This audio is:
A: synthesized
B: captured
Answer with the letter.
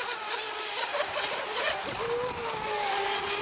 B